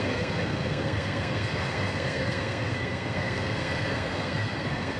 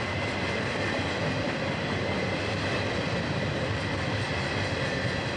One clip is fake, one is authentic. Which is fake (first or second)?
first